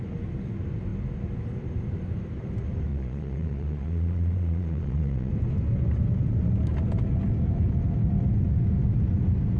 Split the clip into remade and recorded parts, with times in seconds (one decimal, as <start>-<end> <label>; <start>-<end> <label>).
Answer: 0.0-2.9 recorded; 2.9-5.3 remade; 5.3-9.6 recorded